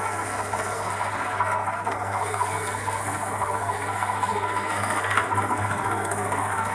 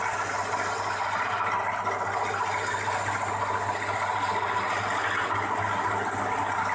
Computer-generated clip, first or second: first